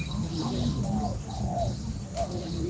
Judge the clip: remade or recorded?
recorded